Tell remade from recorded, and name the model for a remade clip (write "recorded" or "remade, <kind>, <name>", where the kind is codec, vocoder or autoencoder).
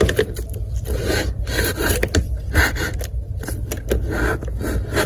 recorded